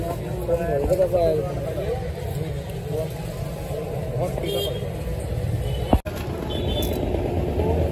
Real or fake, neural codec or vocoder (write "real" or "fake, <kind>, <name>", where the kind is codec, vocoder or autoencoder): real